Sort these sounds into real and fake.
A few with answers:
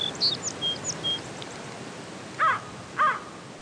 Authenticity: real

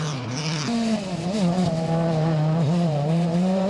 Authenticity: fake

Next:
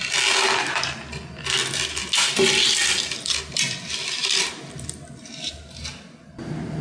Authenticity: real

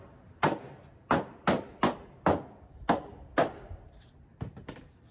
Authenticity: real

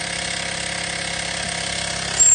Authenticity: real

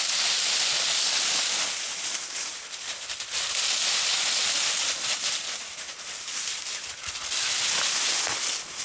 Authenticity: real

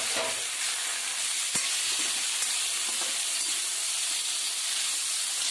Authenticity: real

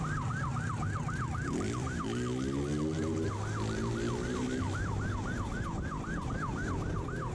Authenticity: real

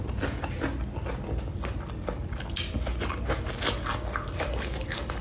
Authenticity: real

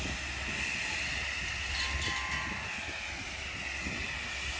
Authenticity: real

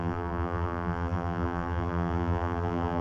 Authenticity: fake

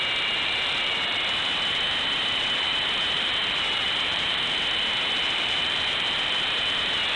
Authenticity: fake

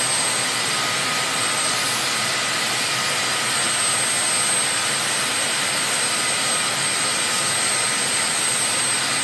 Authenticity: real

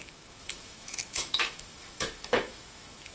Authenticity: fake